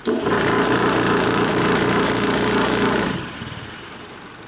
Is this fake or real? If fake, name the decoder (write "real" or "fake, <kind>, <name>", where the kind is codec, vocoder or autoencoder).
fake, vocoder, BigVGAN v2